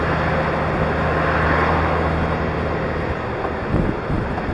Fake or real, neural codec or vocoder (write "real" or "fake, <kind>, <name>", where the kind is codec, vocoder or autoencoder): real